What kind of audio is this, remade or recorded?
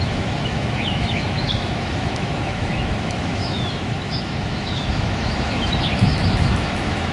remade